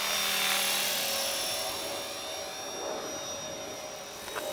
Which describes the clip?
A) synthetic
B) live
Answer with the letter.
B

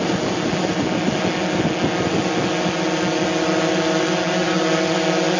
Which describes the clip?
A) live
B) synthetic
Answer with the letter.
A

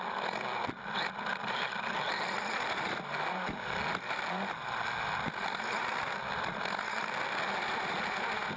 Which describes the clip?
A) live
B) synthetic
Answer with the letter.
A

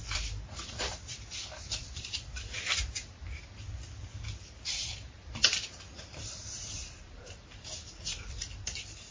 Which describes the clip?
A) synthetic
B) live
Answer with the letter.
A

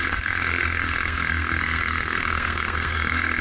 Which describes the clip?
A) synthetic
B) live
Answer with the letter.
A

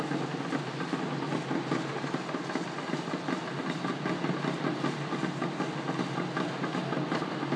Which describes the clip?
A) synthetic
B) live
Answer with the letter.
B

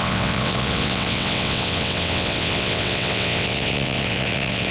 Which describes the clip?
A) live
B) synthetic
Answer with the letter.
B